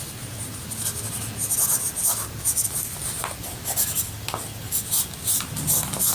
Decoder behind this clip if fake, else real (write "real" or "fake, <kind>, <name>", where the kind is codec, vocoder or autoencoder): real